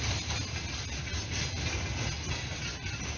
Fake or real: real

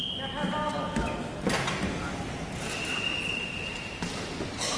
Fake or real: real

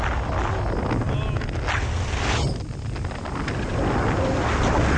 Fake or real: real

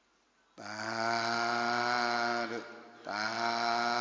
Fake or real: real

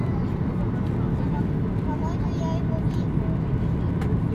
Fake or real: real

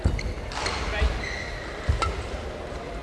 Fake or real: real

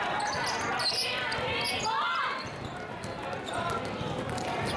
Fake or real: real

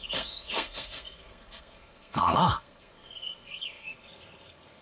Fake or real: fake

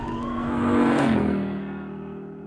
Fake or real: fake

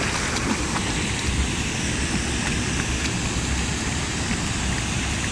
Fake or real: real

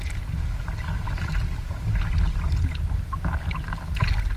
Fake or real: real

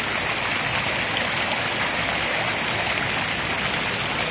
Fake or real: real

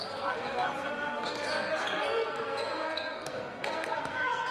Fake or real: fake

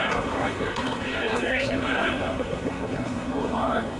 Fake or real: fake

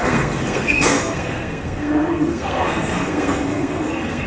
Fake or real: fake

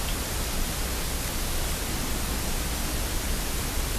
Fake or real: real